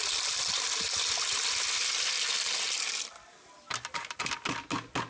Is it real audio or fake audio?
real